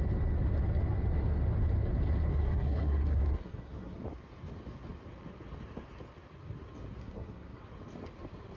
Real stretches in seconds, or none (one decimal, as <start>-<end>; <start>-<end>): 0.0-2.3; 4.0-7.0; 7.6-8.6